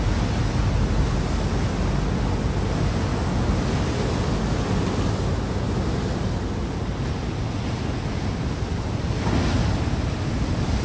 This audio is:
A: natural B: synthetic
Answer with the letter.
A